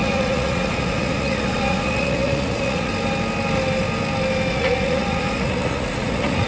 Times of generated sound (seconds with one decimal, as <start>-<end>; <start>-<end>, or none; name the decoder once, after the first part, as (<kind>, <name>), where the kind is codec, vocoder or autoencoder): 0.0-2.9 (vocoder, Vocos); 4.5-6.5